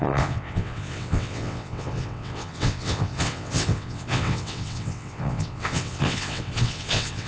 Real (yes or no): no